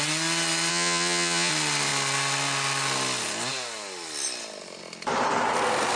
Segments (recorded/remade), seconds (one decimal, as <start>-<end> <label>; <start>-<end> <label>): 0.0-0.7 recorded; 0.7-1.5 remade; 1.5-6.0 recorded